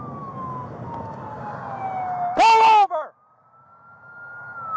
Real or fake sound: real